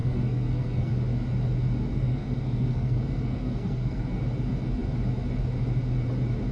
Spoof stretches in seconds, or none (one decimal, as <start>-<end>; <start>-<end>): 0.0-0.9; 1.9-4.2